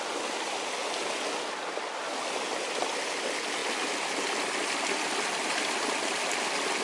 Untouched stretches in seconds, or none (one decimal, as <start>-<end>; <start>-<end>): 0.0-6.8